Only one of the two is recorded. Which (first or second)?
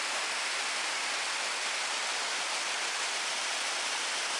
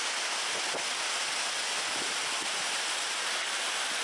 second